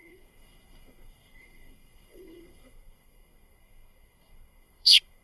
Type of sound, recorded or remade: remade